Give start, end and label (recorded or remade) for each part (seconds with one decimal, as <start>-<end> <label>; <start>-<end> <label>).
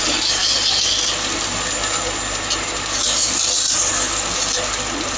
0.0-5.2 recorded